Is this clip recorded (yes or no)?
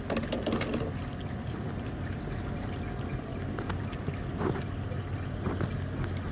yes